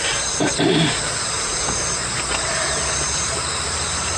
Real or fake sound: fake